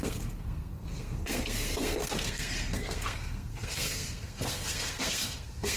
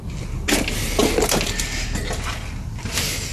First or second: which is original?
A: second